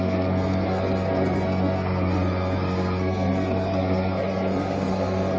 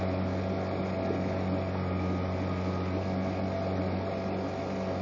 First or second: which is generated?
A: first